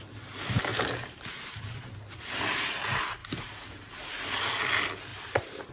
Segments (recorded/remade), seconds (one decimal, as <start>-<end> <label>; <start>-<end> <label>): 0.0-0.7 recorded; 0.7-2.8 remade; 2.8-3.2 recorded; 3.2-3.9 remade; 3.9-5.1 recorded; 5.1-5.7 remade